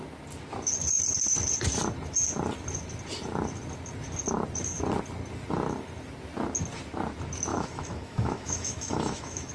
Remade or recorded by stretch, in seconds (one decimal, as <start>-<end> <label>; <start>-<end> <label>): 0.0-7.5 recorded; 7.5-9.5 remade

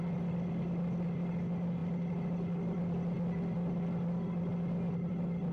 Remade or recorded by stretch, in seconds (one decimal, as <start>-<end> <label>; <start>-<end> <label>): 0.0-5.5 recorded